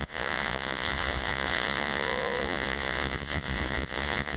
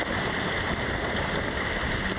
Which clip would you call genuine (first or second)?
second